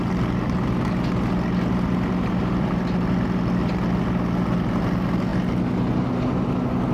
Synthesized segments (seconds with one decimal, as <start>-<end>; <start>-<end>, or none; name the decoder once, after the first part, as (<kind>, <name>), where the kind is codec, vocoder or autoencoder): none